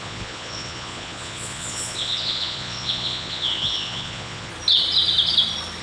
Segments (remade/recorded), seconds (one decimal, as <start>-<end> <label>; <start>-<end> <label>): 0.0-4.5 remade; 4.5-5.8 recorded